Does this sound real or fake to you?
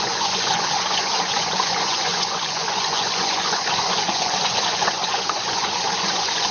fake